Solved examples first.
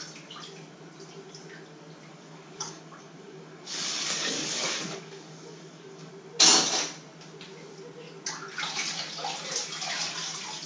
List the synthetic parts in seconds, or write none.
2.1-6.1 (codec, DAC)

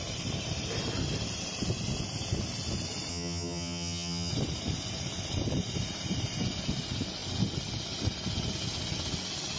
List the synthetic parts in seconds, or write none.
3.1-4.3 (vocoder, HiFi-GAN)

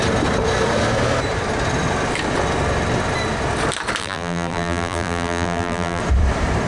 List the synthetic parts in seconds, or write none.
4.0-6.0 (vocoder, BigVGAN v2)

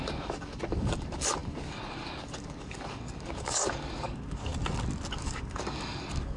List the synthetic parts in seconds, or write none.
0.0-4.5 (codec, DAC); 5.1-6.4

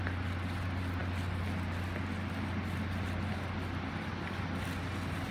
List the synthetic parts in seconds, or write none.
none

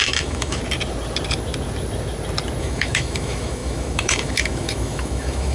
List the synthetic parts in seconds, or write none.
0.0-0.6 (autoencoder, DAC-VAE); 2.6-5.5